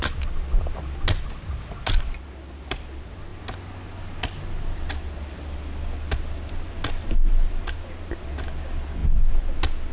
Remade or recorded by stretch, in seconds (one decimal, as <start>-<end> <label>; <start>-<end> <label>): 0.0-9.9 recorded